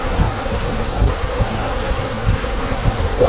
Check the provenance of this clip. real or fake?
fake